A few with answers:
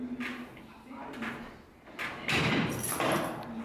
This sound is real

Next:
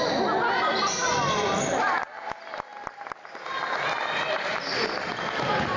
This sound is real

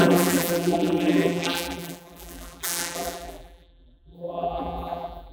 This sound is fake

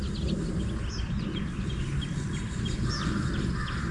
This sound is real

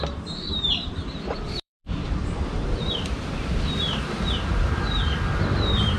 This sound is fake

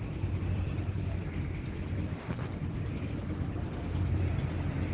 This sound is fake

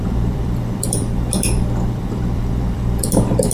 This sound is fake